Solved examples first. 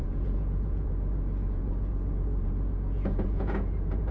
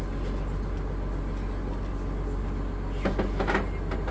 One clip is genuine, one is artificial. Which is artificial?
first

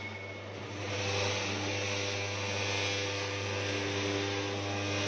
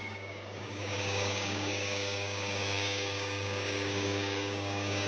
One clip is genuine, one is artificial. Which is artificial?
second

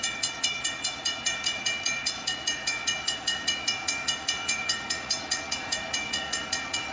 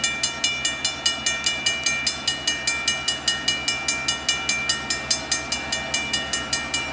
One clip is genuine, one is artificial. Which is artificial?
first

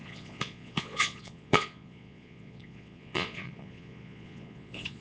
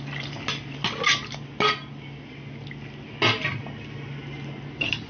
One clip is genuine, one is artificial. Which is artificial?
first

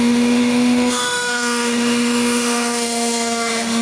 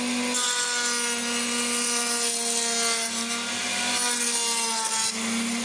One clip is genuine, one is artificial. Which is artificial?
first